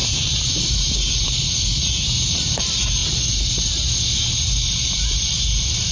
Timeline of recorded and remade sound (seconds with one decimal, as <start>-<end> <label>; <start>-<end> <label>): 0.0-3.0 remade; 3.0-4.3 recorded; 4.3-5.9 remade